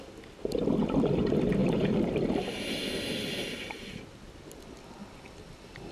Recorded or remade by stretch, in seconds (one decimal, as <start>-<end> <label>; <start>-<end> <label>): 0.0-1.6 recorded; 1.6-2.8 remade; 2.8-5.9 recorded